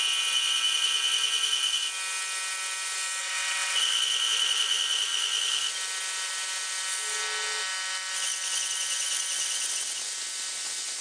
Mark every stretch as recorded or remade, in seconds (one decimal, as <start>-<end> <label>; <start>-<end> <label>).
0.0-3.2 recorded; 3.2-4.0 remade; 4.0-11.0 recorded